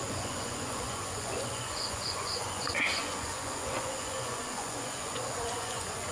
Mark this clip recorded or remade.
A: remade